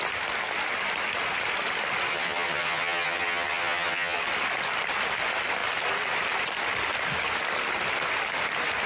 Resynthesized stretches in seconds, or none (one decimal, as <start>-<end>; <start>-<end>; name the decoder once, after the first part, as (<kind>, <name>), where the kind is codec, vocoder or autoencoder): 2.1-4.2 (vocoder, HiFi-GAN)